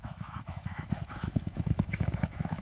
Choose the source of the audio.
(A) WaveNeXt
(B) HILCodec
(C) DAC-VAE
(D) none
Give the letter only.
C